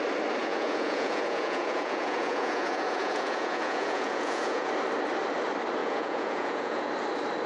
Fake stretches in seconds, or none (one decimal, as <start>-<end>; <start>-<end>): 0.4-4.7; 5.8-6.9